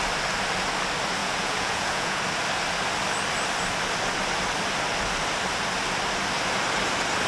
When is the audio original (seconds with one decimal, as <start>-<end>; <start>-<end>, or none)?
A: 0.0-1.2; 2.2-7.3